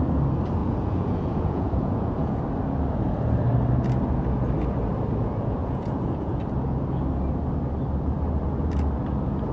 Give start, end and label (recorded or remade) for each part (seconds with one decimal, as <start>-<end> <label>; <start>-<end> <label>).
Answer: 0.0-0.6 recorded; 0.6-2.4 remade; 2.4-5.2 recorded; 5.2-6.4 remade; 6.4-9.5 recorded